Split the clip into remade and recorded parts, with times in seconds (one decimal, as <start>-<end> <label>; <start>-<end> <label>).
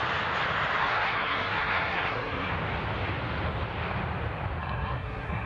0.0-0.8 recorded; 0.8-2.5 remade; 2.5-4.6 recorded; 4.6-5.5 remade